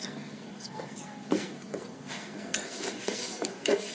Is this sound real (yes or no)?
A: no